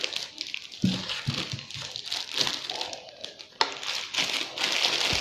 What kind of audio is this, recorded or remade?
recorded